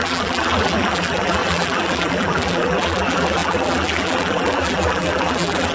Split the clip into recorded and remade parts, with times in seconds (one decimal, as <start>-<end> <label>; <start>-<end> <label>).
0.0-5.7 remade